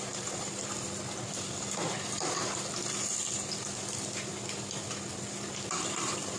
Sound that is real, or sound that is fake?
fake